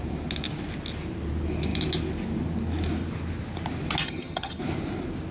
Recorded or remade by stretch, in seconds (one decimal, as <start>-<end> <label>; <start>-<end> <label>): 0.0-4.0 recorded; 4.0-4.6 remade; 4.6-5.3 recorded